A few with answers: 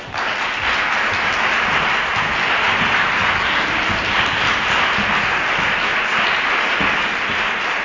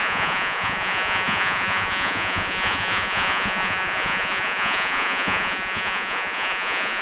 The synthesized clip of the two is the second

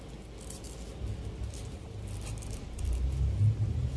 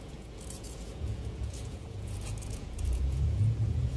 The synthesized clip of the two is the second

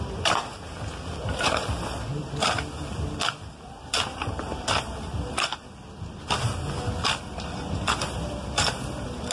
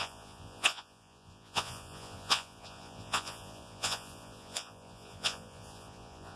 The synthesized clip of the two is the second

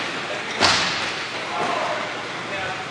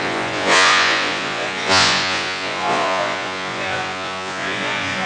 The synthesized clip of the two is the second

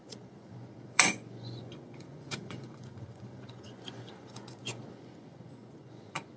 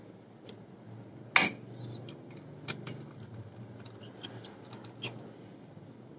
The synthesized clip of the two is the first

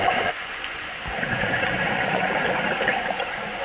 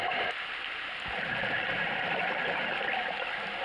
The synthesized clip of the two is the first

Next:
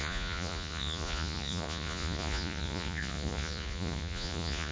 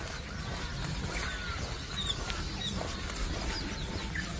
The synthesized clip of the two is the first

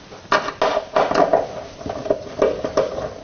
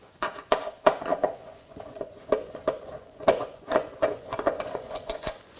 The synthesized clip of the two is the second